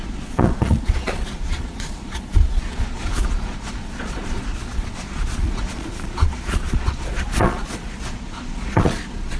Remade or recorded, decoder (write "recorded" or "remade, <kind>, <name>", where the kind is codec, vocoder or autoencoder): remade, vocoder, Vocos